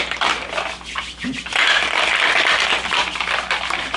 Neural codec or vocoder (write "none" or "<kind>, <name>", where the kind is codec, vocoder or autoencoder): none